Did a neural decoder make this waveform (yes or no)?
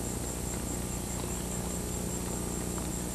no